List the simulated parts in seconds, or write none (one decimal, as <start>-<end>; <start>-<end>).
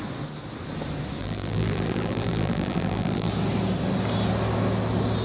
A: 1.2-3.3